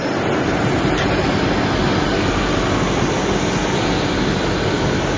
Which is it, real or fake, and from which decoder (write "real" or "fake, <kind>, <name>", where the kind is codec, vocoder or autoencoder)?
real